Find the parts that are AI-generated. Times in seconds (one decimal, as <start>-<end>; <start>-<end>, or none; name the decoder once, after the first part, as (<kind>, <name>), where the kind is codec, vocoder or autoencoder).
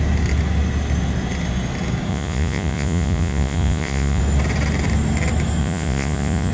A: 2.1-4.2 (vocoder, Vocos); 5.6-6.5